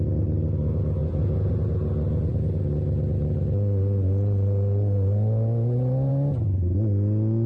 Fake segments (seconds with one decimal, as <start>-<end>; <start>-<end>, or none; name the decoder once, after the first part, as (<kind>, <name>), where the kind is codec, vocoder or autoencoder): 1.0-1.5 (vocoder, Vocos)